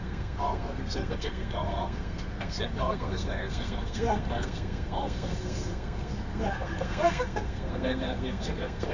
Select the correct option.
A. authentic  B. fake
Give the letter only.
B